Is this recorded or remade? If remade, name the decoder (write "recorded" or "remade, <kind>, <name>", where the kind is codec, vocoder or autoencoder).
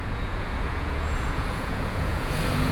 remade, vocoder, Vocos